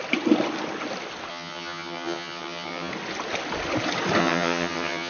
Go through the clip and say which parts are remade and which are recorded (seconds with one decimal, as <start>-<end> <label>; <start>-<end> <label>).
0.0-1.3 recorded; 1.3-2.9 remade; 2.9-4.2 recorded; 4.2-5.1 remade